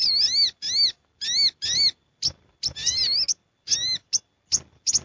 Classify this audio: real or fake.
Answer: real